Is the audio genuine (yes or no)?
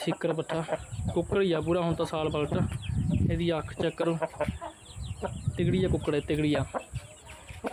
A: yes